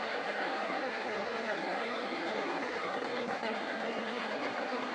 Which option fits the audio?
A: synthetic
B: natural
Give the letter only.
A